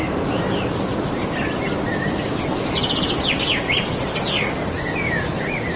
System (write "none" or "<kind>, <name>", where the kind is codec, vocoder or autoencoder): none